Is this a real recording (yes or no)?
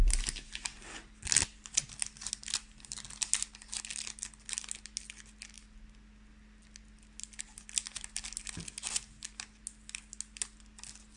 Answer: yes